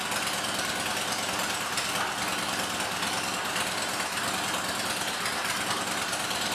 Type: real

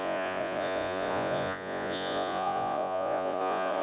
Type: fake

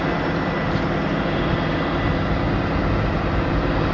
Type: real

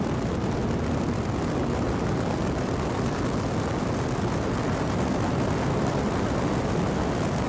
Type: real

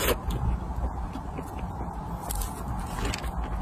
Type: real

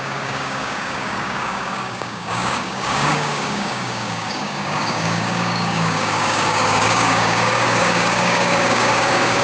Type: fake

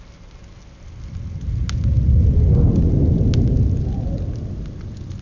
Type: real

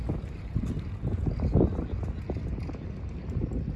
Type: real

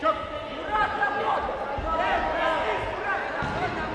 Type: real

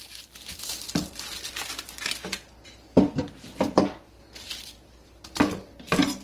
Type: real